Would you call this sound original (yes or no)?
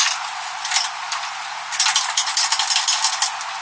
yes